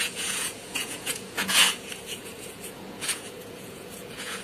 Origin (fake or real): fake